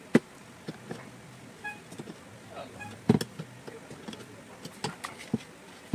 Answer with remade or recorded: recorded